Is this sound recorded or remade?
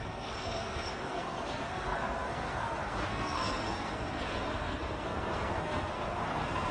remade